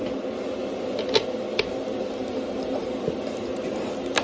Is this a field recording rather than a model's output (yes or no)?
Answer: yes